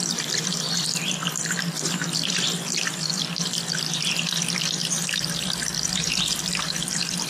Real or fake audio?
fake